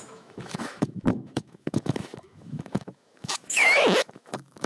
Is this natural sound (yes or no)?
no